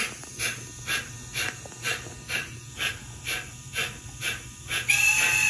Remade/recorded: recorded